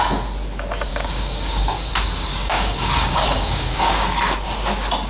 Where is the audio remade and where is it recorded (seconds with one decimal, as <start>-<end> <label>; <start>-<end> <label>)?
0.0-0.9 recorded; 0.9-1.9 remade; 1.9-2.3 recorded; 2.3-4.2 remade; 4.2-5.1 recorded